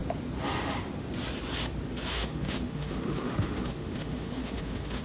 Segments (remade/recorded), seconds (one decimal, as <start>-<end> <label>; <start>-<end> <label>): 0.0-2.1 recorded; 2.1-5.0 remade